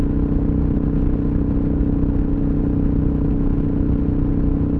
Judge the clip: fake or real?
real